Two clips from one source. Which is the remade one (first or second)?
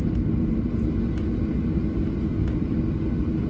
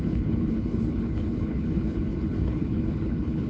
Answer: second